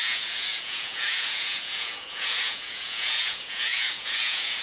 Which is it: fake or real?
fake